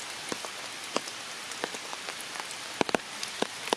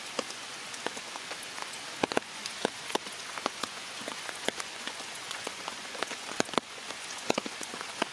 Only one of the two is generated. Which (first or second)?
second